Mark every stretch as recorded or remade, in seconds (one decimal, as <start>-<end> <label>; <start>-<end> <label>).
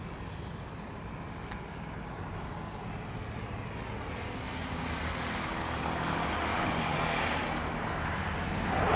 0.0-6.5 recorded; 6.5-7.0 remade; 7.0-9.0 recorded